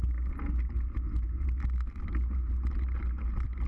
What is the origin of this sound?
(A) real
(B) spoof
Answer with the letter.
A